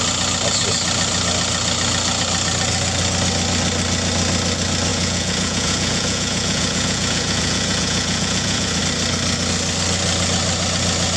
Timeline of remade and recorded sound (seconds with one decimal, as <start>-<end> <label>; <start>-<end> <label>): 0.0-4.9 recorded; 4.9-8.8 remade; 8.8-11.2 recorded